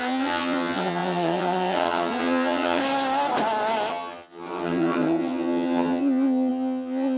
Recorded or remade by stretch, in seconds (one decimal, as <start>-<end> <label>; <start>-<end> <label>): 0.0-2.8 remade; 2.8-3.9 recorded; 3.9-7.2 remade